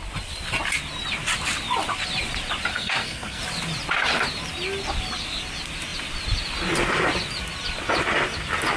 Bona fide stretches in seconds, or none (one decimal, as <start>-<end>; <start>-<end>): 0.0-2.7; 3.4-8.8